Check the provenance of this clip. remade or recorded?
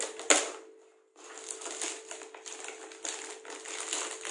recorded